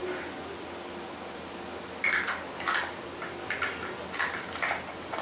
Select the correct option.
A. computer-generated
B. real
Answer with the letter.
B